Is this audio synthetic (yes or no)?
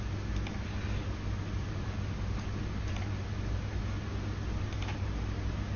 no